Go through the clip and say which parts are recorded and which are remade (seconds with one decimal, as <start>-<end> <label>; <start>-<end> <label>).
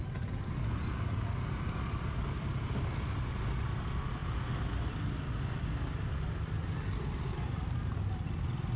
0.0-8.8 recorded